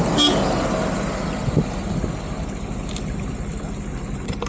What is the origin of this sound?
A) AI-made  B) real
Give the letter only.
B